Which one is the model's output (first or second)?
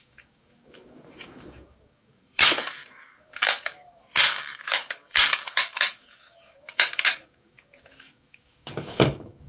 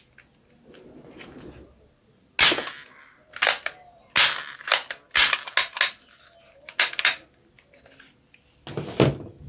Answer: first